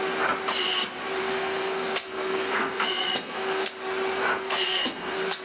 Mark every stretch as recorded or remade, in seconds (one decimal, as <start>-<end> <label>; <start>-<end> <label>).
0.0-1.2 recorded; 1.2-3.7 remade; 3.7-4.2 recorded; 4.2-5.4 remade